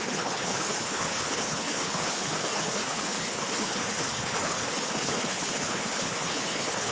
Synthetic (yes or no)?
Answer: yes